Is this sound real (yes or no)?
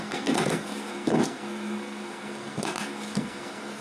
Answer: no